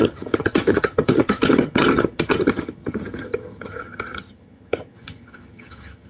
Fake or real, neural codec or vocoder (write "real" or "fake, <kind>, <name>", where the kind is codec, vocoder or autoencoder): fake, vocoder, HiFi-GAN